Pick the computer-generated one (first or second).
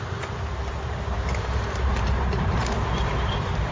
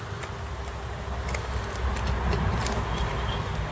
first